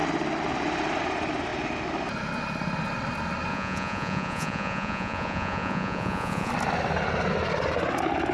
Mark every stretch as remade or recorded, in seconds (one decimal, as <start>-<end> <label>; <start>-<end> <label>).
0.0-3.5 recorded; 3.5-6.5 remade; 6.5-8.3 recorded